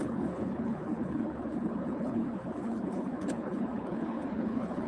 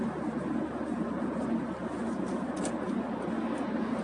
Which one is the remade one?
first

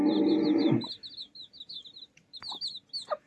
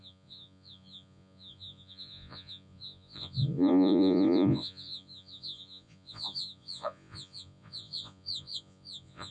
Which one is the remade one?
second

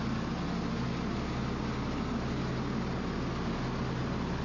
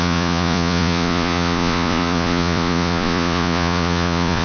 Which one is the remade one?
second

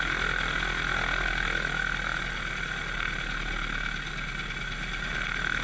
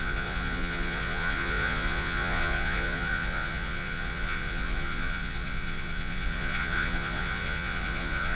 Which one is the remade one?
second